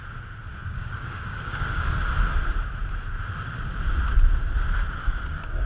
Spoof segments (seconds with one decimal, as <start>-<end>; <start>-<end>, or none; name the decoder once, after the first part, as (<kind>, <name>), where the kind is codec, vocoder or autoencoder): 0.6-2.0 (codec, DAC); 5.0-5.7